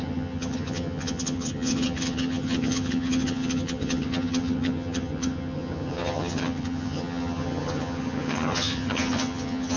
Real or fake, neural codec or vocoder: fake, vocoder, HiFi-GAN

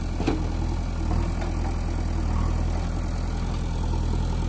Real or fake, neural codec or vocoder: real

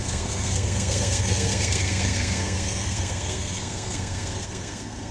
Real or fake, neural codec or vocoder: fake, codec, SNAC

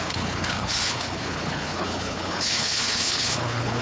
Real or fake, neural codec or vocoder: fake, codec, HILCodec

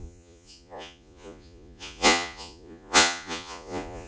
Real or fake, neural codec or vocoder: fake, vocoder, Vocos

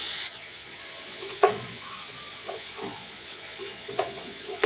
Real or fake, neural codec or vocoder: fake, vocoder, Vocos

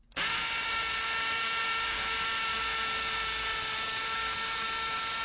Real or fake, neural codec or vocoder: real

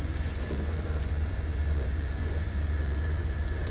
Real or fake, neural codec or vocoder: fake, vocoder, Vocos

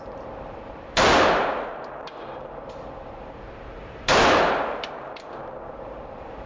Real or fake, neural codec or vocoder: fake, vocoder, BigVGAN v2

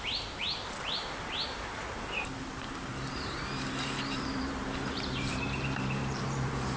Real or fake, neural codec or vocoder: fake, vocoder, BigVGAN v2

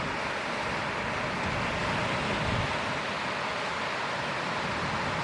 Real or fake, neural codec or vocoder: real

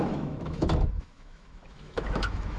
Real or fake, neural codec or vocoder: fake, autoencoder, DAC-VAE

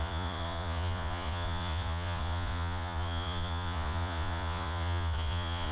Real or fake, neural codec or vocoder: fake, vocoder, Vocos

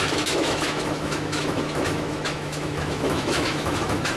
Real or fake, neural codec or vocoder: fake, autoencoder, DAC-VAE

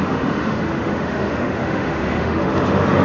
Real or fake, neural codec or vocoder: fake, autoencoder, DAC-VAE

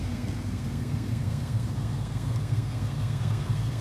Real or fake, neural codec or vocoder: fake, codec, SNAC